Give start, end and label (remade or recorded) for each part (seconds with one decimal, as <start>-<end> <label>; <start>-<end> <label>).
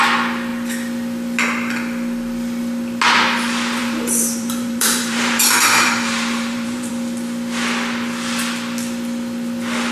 0.0-3.8 recorded; 3.8-6.9 remade; 6.9-9.9 recorded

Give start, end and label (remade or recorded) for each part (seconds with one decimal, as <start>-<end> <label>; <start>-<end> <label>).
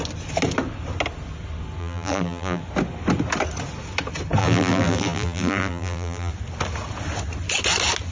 0.0-1.8 recorded; 1.8-2.6 remade; 2.6-4.4 recorded; 4.4-6.3 remade; 6.3-8.1 recorded